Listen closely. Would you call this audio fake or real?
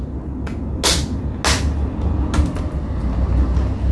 real